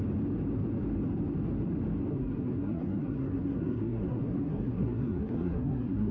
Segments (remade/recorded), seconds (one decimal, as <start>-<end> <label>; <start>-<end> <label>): 0.0-2.1 recorded; 2.1-6.1 remade